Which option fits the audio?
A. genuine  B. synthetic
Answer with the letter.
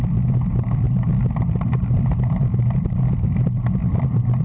A